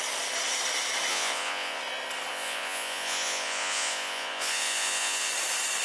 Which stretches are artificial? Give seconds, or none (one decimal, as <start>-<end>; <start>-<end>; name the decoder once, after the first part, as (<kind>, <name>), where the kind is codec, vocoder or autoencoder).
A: 1.1-1.8 (vocoder, Vocos); 2.3-5.3